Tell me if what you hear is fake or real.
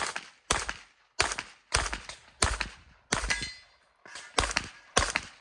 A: real